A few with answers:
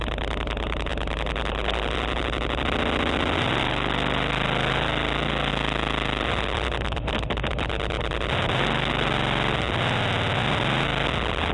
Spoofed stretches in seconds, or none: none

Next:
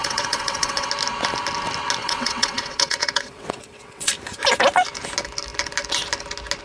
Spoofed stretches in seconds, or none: 0.0-0.9 (vocoder, WaveNeXt); 2.0-4.1

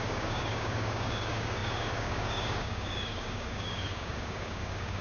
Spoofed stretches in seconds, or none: 0.0-5.0 (codec, DAC)

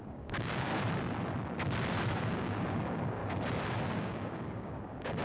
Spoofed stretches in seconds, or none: 0.0-0.7 (codec, DAC); 2.1-3.2; 4.0-5.2

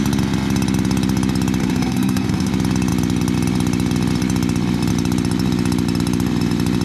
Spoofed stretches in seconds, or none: 1.6-2.5 (codec, SNAC)

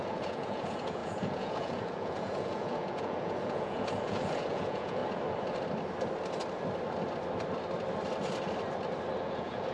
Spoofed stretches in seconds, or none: 0.0-5.0 (vocoder, Vocos); 9.2-9.7